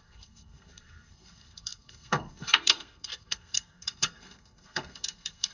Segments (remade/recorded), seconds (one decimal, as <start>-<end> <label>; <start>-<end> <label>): 0.0-5.5 remade